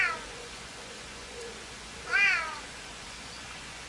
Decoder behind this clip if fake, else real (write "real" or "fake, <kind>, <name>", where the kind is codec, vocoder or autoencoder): fake, vocoder, Vocos